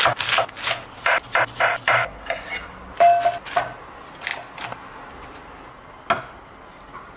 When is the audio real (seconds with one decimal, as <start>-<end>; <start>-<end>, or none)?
0.0-7.2